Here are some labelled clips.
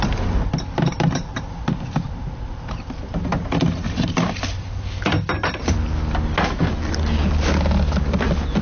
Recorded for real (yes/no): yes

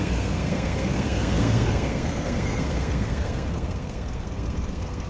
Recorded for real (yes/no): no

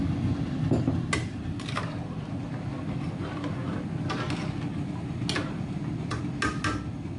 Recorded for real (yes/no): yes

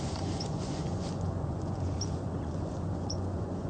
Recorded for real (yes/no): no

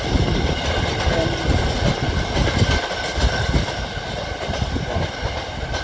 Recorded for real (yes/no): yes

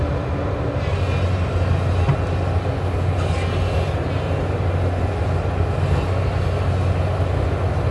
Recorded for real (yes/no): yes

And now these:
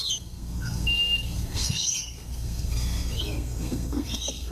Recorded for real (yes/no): no